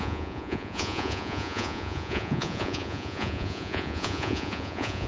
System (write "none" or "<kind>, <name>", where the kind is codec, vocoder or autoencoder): vocoder, Vocos